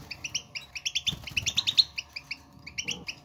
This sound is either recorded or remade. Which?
recorded